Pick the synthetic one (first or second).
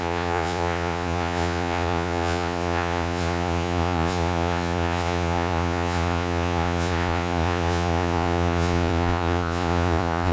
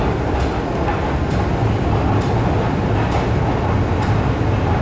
first